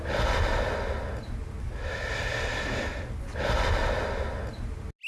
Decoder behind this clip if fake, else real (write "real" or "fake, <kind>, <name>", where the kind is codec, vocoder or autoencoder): real